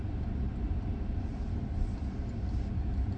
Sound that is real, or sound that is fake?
real